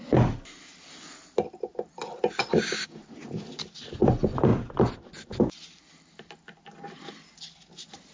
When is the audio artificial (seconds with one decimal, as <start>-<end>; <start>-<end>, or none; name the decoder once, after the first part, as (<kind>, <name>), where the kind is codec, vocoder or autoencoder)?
2.5-3.0 (codec, DAC)